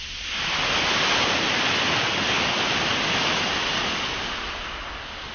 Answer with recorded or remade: recorded